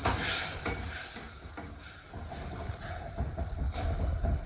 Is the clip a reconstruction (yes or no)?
no